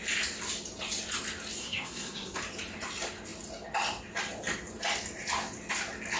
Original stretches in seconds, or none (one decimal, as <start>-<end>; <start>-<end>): 0.0-1.6; 2.4-6.2